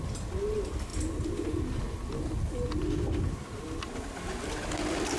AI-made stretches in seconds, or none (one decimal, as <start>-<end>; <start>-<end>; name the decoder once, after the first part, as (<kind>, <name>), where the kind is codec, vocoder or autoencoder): none